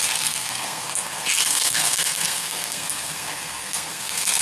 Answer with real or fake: fake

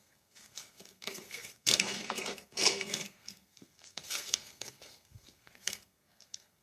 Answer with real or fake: fake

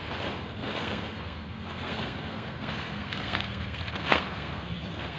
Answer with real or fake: fake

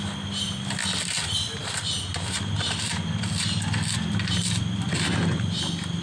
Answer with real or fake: real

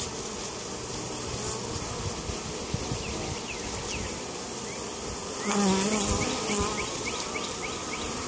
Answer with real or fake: real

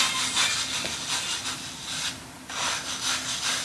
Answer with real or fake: real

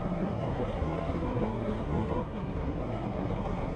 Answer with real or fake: fake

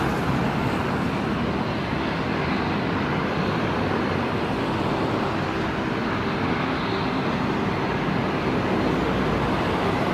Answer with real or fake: real